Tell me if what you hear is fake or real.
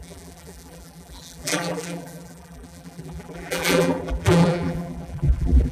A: fake